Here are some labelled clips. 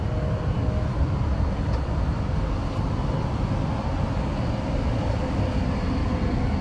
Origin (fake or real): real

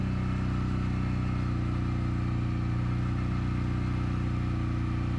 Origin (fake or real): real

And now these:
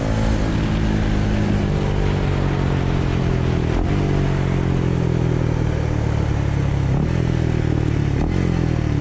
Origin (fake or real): real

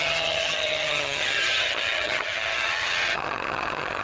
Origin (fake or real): fake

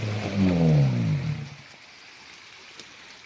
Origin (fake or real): real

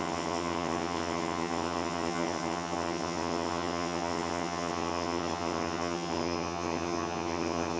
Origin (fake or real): fake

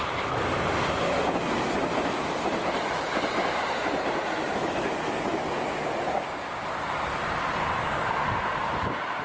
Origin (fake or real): real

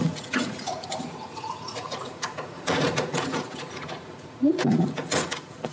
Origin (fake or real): fake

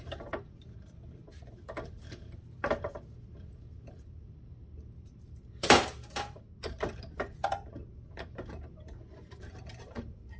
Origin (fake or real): fake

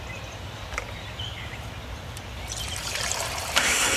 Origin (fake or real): fake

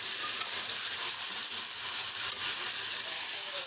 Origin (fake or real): real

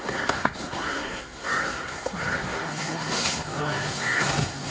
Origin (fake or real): fake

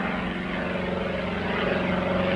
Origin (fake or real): real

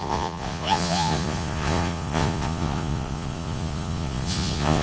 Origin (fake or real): fake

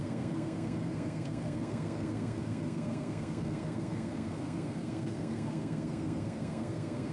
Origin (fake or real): fake